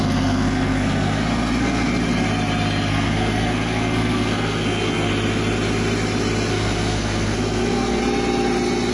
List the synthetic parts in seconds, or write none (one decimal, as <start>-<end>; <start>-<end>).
0.0-1.9; 2.9-5.1; 6.5-8.0